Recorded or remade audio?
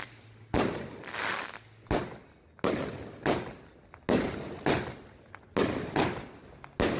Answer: recorded